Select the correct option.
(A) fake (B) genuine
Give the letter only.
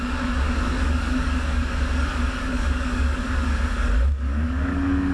A